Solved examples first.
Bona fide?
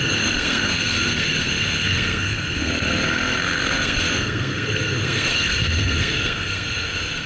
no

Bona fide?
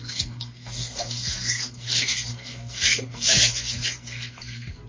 no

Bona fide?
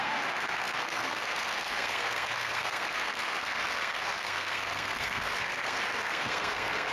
no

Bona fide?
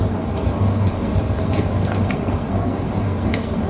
no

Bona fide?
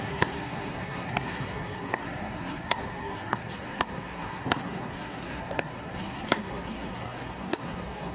no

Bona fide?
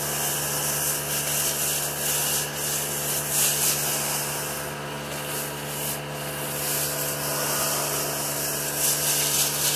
yes